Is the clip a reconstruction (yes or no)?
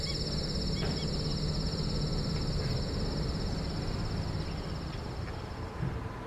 no